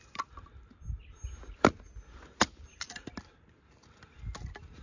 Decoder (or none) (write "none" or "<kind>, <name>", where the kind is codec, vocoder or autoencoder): none